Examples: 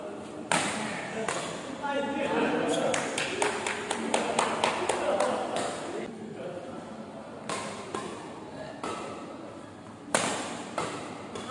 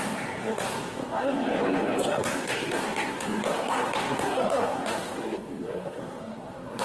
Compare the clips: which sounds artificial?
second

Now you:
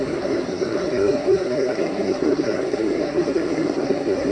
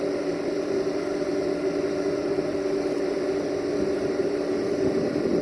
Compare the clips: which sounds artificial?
first